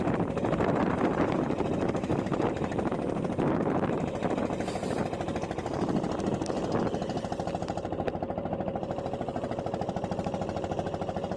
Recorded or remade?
remade